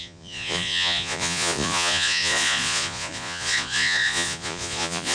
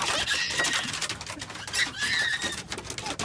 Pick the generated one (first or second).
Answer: first